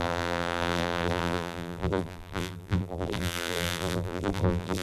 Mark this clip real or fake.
fake